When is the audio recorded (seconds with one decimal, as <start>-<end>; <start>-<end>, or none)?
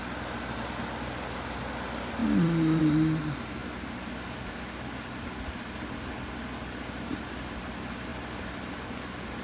0.0-2.2; 2.8-8.1; 8.9-9.4